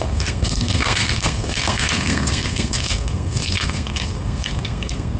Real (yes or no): no